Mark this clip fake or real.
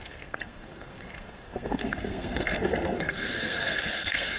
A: fake